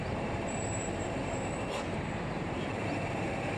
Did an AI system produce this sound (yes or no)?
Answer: yes